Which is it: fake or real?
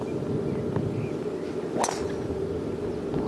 real